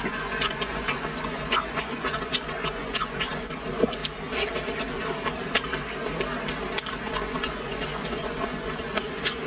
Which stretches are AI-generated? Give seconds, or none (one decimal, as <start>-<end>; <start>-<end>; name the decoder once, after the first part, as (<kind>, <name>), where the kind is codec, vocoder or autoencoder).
0.0-4.0 (vocoder, Vocos); 6.9-9.5